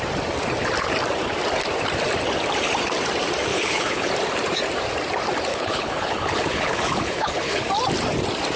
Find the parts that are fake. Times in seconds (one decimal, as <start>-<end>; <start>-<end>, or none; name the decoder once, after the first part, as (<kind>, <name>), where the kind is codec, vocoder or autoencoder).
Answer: 3.5-4.1 (codec, HILCodec); 5.5-7.7

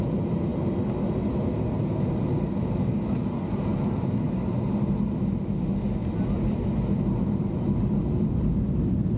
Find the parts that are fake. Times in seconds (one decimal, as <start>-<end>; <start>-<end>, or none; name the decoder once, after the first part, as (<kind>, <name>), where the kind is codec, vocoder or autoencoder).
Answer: none

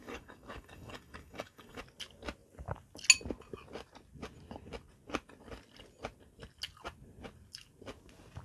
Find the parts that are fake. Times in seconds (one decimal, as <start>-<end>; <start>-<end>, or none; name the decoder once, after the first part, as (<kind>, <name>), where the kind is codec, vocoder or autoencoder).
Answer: 0.0-1.8 (codec, DAC)

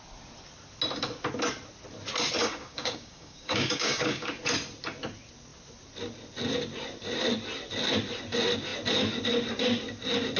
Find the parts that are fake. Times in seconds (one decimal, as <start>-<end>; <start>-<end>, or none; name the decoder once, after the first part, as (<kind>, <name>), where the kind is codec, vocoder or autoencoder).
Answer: 2.4-4.4 (codec, DAC)

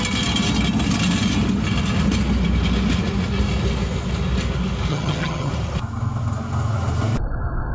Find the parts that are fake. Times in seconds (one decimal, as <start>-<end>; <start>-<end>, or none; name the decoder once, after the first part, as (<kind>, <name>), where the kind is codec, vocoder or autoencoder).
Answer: 4.9-5.5 (vocoder, HiFi-GAN)

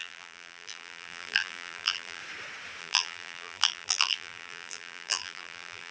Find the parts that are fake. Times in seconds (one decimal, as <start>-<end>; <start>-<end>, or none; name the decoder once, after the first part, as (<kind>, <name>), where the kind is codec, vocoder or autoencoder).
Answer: 0.0-2.2 (vocoder, BigVGAN v2); 2.8-5.9

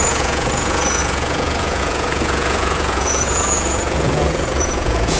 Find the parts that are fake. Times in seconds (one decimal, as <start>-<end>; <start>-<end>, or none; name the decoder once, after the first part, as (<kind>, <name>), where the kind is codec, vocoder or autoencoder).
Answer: 0.0-5.2 (vocoder, Vocos)

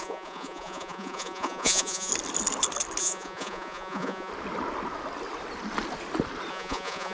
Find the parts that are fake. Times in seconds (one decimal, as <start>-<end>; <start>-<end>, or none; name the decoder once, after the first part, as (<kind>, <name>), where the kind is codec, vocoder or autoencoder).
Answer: 0.0-2.1 (vocoder, Vocos); 3.0-4.3; 6.5-7.1